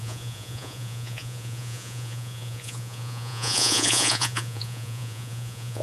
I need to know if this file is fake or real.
fake